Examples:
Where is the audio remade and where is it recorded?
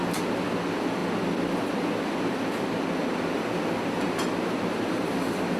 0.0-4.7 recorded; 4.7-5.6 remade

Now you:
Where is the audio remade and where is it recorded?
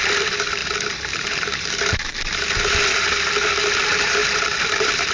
0.0-5.1 remade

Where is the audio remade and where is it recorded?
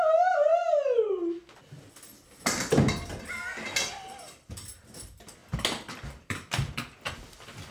0.0-0.5 remade; 0.5-3.8 recorded; 3.8-5.4 remade; 5.4-5.9 recorded; 5.9-7.7 remade